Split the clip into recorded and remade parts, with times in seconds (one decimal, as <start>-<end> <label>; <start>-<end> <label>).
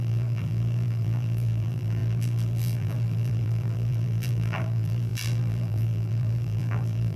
0.0-7.2 remade